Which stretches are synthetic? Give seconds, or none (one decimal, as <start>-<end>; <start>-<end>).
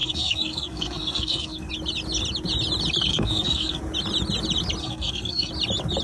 0.0-1.7; 3.1-3.8; 4.8-5.5